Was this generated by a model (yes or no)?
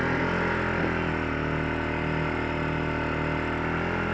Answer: no